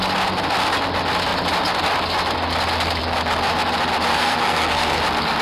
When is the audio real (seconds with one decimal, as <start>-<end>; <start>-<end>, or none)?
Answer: 0.0-4.1; 5.0-5.4